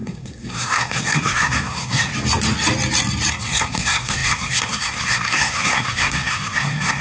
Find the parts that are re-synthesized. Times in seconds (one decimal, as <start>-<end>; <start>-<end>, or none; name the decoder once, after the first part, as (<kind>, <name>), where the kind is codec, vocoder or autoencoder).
0.0-2.1 (codec, SNAC); 3.3-7.0